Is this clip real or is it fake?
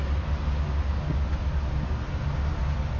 real